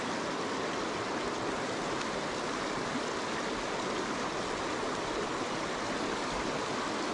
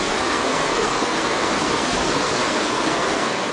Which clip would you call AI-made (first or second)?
second